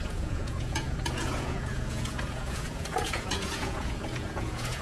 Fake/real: fake